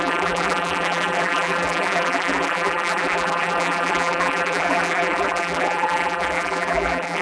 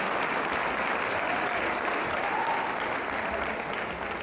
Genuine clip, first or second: second